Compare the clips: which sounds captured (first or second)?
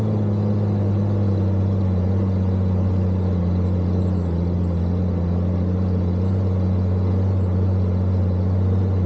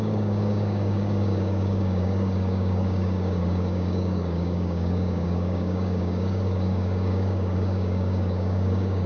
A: first